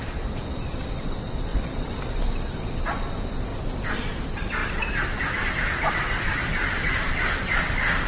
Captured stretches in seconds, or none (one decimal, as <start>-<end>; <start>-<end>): 0.0-1.5; 2.0-6.7; 7.2-8.1